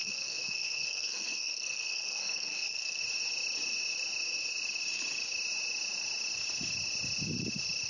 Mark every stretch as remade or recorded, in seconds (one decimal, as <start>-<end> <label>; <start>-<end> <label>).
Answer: 0.0-3.0 remade; 3.0-7.9 recorded

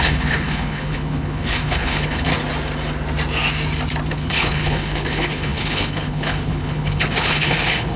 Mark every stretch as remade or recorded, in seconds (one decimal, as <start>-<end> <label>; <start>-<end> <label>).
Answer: 0.0-2.3 remade; 2.3-4.1 recorded; 4.1-8.0 remade

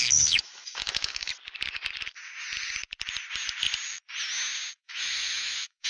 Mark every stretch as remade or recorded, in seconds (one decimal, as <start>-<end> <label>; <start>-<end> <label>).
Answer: 0.0-1.3 remade; 1.3-4.8 recorded; 4.8-5.9 remade